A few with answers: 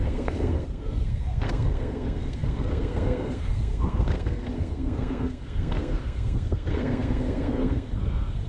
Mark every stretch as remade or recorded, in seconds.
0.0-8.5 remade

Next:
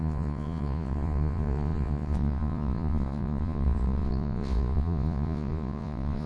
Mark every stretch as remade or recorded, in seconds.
0.0-6.3 remade

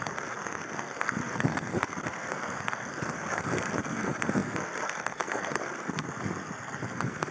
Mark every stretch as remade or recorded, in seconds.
0.0-7.3 remade